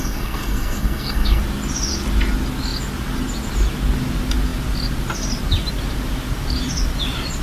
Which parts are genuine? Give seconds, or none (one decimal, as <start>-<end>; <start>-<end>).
1.4-7.4